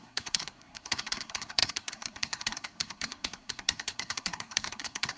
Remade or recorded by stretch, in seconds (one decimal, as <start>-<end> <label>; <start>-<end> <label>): 0.0-5.2 remade